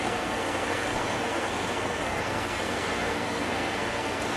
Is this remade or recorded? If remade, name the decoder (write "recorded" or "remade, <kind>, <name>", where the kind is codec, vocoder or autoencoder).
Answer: remade, codec, SNAC